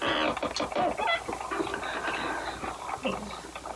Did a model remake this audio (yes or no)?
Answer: no